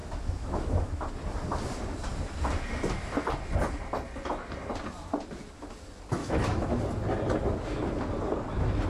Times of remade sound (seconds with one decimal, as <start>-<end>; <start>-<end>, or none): 0.0-1.1; 6.2-6.8